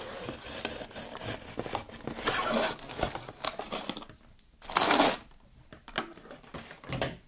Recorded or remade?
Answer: recorded